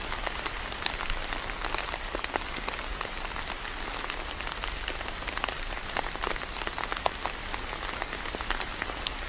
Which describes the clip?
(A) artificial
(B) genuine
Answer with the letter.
B